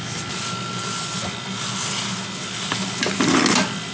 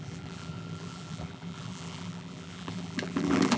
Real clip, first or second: first